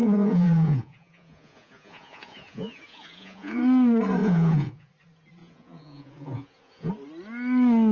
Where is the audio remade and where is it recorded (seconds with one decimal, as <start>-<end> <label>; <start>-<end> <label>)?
0.0-3.6 remade; 3.6-4.2 recorded; 4.2-4.9 remade; 4.9-5.4 recorded; 5.4-6.9 remade; 6.9-7.9 recorded